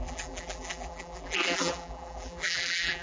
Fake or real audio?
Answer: fake